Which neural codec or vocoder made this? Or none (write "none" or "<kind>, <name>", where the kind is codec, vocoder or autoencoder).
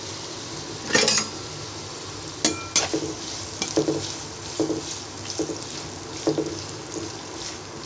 none